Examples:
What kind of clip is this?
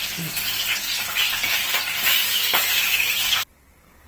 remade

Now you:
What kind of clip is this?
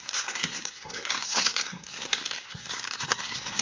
remade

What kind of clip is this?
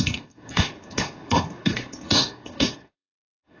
remade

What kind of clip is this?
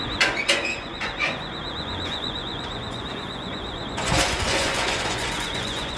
remade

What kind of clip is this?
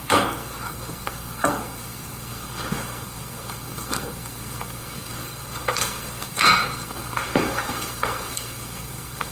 remade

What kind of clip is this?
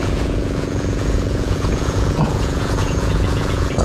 remade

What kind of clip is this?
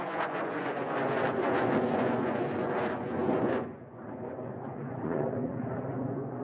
remade